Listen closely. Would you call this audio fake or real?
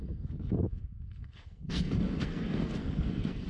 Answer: fake